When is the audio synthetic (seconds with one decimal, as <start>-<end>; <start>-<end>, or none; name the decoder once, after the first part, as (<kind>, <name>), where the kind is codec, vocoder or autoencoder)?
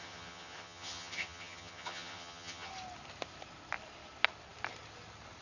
0.0-2.7 (vocoder, HiFi-GAN)